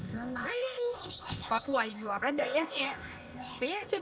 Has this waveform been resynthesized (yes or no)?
yes